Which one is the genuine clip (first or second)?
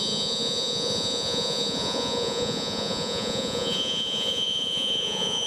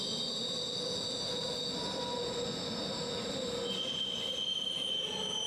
second